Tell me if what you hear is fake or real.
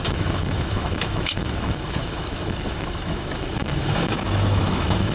fake